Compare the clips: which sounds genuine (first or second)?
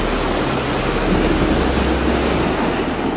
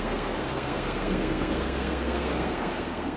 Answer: first